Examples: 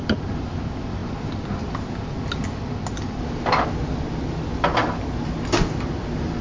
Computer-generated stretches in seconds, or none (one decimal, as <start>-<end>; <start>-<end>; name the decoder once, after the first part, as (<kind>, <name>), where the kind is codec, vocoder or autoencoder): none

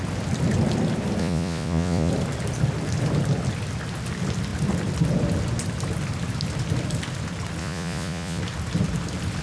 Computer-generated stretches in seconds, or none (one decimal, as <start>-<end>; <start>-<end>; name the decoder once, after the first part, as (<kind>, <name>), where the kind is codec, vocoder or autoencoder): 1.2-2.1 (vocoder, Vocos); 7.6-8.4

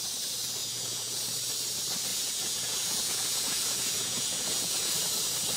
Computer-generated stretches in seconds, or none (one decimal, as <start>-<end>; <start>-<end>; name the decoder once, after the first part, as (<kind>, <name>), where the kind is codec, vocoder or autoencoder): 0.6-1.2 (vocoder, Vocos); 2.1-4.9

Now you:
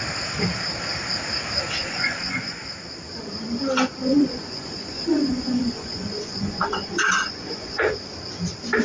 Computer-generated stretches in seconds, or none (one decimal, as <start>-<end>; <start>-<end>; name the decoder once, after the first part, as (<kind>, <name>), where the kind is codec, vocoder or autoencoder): 1.8-2.6 (vocoder, Vocos); 4.0-7.8